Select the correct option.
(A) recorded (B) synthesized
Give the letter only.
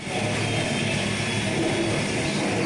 A